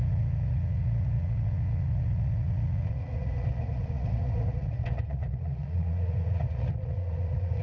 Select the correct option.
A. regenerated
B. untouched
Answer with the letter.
A